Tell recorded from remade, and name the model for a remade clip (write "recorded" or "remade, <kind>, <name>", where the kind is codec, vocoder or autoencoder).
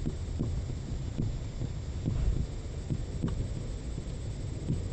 recorded